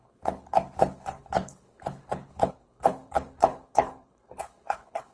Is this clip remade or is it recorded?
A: remade